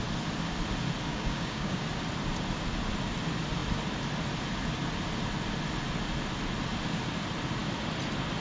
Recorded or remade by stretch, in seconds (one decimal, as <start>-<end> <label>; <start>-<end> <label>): 0.0-1.1 recorded; 1.1-1.8 remade; 1.8-8.4 recorded